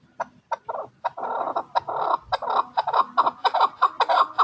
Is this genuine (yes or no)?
yes